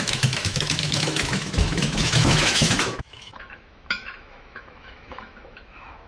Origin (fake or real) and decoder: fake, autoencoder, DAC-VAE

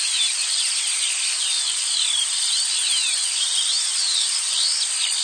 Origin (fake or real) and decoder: real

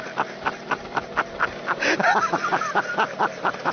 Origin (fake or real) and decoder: real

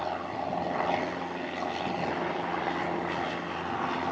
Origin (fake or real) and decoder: real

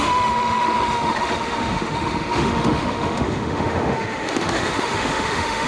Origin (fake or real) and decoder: fake, autoencoder, DAC-VAE